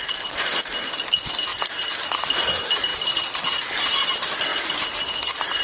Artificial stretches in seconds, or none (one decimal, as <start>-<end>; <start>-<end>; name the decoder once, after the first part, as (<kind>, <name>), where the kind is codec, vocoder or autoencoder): 1.5-2.2 (vocoder, BigVGAN v2); 4.5-5.0